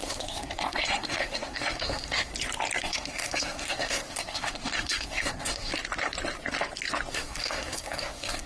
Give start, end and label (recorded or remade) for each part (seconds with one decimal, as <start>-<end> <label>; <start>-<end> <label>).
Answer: 0.0-2.3 remade; 2.3-2.8 recorded; 2.8-5.7 remade; 5.7-7.1 recorded; 7.1-8.5 remade